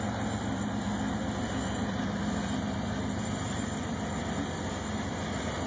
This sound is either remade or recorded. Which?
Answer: recorded